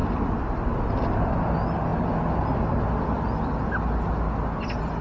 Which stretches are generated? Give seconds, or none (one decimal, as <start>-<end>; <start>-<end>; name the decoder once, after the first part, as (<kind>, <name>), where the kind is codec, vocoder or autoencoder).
none